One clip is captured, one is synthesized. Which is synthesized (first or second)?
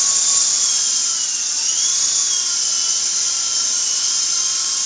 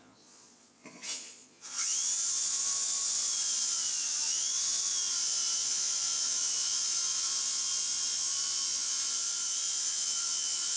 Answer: second